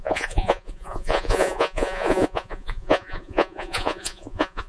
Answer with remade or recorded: remade